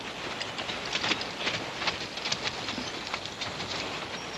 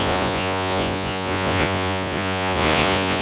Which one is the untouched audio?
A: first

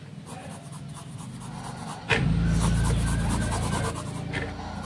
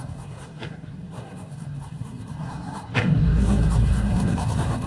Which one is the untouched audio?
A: first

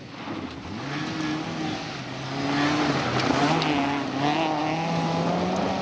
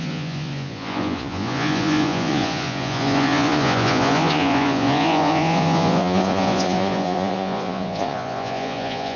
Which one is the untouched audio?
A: first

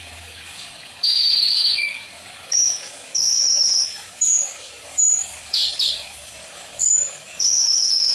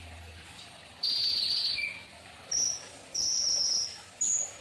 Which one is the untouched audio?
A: second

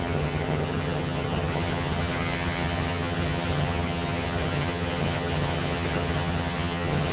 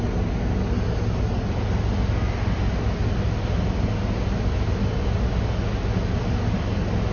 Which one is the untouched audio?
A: second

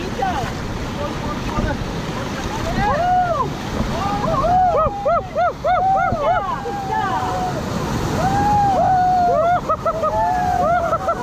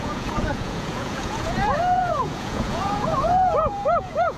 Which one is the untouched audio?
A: first